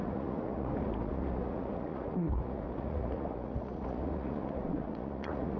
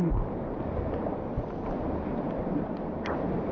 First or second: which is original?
second